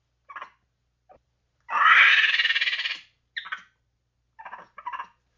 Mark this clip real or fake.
real